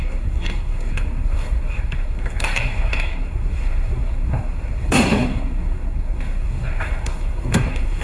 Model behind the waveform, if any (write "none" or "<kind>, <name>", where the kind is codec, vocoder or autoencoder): codec, SNAC